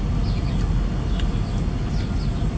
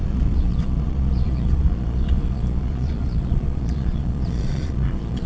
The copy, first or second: second